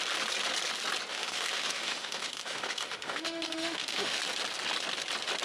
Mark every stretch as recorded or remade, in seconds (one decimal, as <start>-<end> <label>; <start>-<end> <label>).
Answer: 0.0-1.1 recorded; 1.1-4.2 remade; 4.2-5.4 recorded